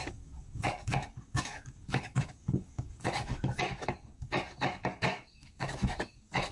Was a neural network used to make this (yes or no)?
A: yes